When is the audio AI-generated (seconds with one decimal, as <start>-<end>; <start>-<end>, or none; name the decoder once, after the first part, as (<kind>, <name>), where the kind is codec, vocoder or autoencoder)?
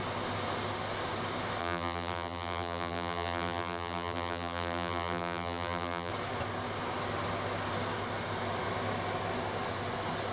1.6-6.1 (vocoder, BigVGAN v2)